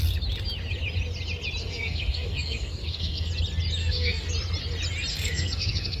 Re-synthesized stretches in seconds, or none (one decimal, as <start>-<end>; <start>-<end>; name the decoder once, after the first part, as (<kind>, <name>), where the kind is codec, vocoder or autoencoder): 1.6-3.3 (codec, SNAC); 3.8-4.3; 5.1-6.0